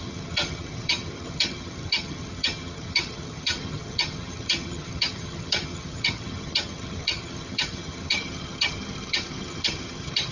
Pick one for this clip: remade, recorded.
remade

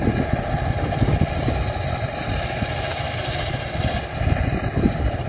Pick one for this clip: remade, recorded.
recorded